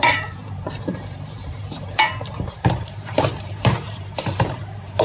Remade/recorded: remade